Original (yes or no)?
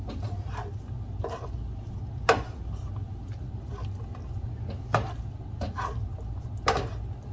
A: yes